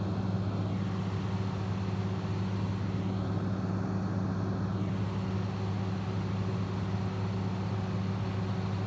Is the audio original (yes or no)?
yes